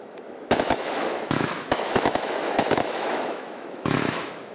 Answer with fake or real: fake